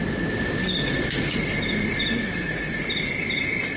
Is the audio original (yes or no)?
yes